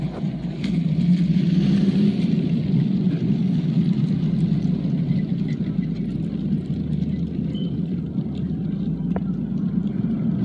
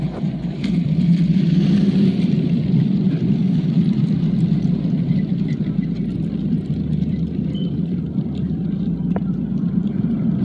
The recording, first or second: first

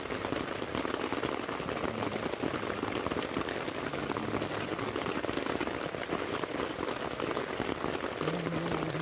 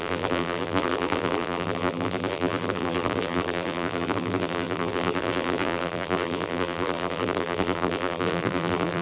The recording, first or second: first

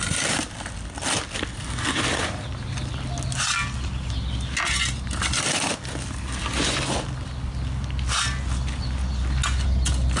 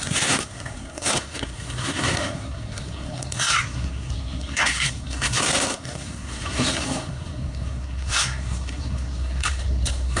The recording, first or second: first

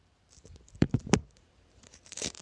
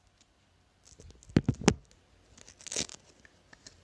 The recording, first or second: second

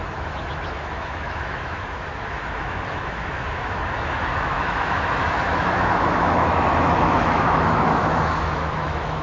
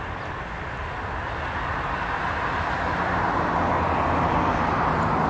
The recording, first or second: second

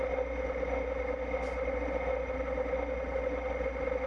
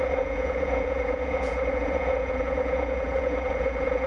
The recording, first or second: first